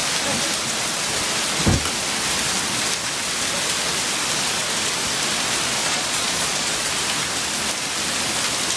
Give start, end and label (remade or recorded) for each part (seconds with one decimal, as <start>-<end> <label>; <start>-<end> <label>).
0.0-5.8 recorded; 5.8-6.9 remade; 6.9-8.8 recorded